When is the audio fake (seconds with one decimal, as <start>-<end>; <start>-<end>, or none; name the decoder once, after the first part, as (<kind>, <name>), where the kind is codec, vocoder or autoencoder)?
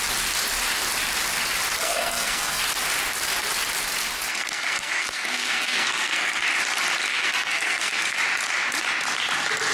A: 1.8-2.6 (codec, SNAC); 4.3-6.4; 7.1-8.2